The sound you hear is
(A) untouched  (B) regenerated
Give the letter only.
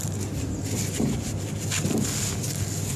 A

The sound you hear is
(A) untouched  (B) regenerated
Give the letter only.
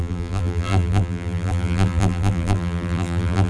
B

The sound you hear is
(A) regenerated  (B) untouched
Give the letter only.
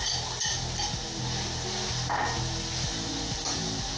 B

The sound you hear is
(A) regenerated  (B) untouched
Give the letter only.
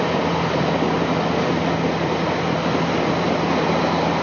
B